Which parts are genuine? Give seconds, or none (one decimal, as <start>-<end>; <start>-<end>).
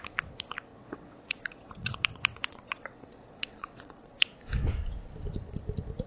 0.0-0.7; 4.4-6.1